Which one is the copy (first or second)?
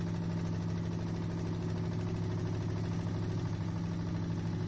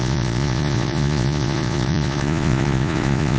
second